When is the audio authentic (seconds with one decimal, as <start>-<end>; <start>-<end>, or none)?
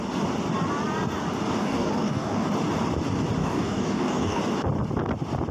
0.0-1.6; 2.5-3.4; 4.4-5.5